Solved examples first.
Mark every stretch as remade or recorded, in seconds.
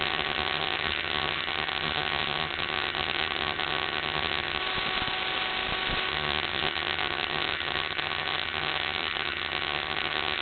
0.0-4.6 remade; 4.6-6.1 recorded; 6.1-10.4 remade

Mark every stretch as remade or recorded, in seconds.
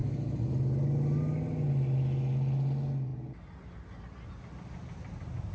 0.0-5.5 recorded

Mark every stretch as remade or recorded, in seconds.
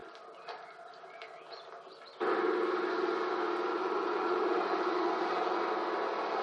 0.0-3.8 recorded; 3.8-5.6 remade; 5.6-6.4 recorded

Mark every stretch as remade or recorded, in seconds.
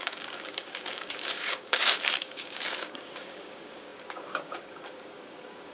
0.0-5.7 remade